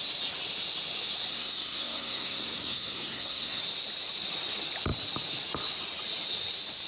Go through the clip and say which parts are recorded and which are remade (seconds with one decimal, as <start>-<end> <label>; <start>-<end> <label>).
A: 0.0-1.3 recorded; 1.3-3.6 remade; 3.6-6.9 recorded